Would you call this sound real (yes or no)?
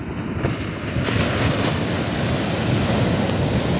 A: yes